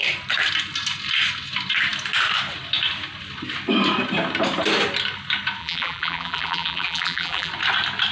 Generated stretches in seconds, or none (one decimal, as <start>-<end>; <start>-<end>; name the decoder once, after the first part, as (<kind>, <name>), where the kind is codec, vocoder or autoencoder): 5.6-7.5 (vocoder, BigVGAN v2)